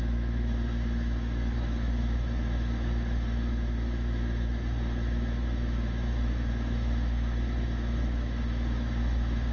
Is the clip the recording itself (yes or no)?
no